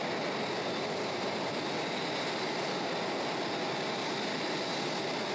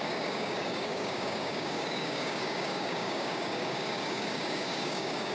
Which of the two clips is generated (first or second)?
second